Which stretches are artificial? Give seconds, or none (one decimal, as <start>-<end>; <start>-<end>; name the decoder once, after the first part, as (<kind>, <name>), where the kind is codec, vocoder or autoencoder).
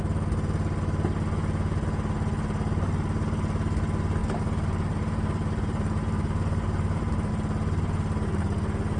4.2-7.3 (vocoder, BigVGAN v2)